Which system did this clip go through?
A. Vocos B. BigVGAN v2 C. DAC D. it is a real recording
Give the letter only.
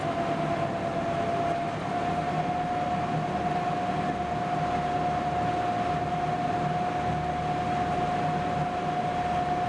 D